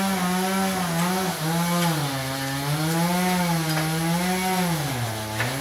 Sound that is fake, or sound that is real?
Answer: real